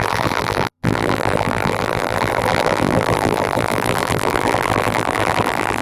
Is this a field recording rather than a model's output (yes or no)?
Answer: no